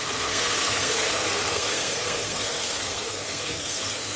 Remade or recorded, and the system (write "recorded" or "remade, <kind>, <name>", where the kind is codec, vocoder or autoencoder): remade, codec, SNAC